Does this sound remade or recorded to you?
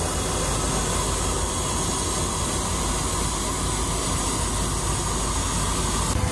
recorded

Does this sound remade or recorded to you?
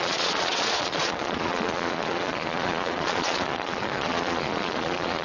remade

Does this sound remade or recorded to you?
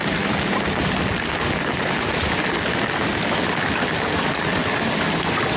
recorded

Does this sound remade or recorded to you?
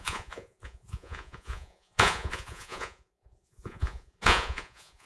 remade